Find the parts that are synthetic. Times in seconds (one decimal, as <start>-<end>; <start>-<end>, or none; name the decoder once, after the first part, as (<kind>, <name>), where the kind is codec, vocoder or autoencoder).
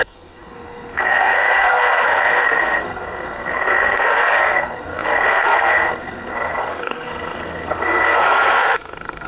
0.0-9.3 (codec, SNAC)